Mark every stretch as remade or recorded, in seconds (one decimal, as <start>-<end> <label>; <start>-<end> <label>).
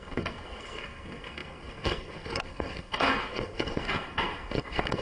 0.0-5.0 remade